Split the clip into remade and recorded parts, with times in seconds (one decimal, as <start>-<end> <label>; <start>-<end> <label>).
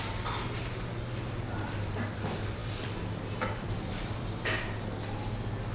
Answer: 0.0-2.6 recorded; 2.6-4.2 remade; 4.2-5.7 recorded